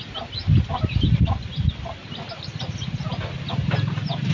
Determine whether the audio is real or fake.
real